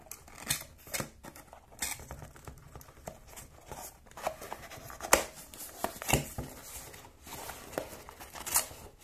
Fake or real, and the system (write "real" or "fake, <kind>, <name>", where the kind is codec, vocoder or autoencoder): real